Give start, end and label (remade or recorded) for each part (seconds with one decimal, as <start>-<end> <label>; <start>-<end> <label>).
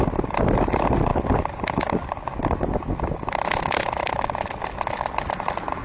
0.0-5.8 recorded